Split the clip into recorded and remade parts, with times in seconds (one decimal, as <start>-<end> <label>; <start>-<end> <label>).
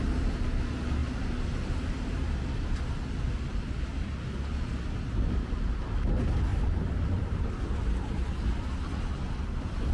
0.0-1.0 recorded; 1.0-6.0 remade; 6.0-6.5 recorded; 6.5-7.5 remade; 7.5-9.9 recorded